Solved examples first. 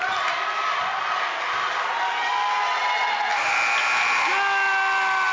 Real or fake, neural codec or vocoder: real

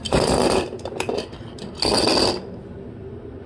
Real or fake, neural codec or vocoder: real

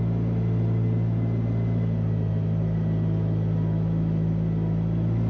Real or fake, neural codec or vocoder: real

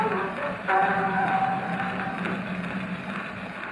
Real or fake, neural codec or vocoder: real